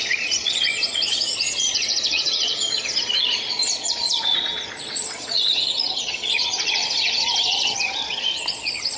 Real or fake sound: fake